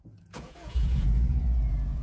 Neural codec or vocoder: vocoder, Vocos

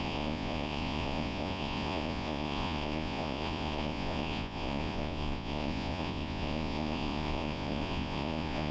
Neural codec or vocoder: vocoder, Vocos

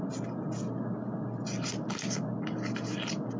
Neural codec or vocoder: none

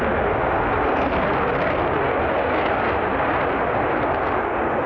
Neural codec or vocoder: none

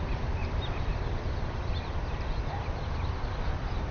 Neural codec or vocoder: none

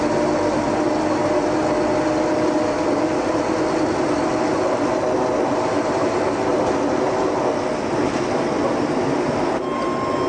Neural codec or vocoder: none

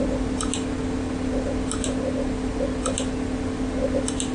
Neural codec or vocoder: none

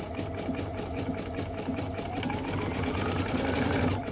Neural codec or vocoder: none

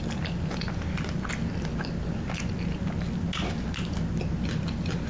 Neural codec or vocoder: none